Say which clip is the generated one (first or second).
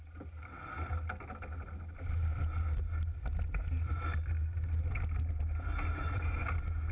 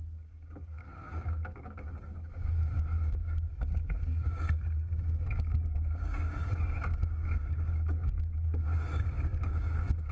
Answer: second